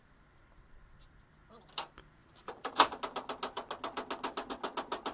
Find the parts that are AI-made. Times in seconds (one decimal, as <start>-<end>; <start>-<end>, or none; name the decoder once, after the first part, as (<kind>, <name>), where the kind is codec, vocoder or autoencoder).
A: 2.2-3.0 (vocoder, BigVGAN v2)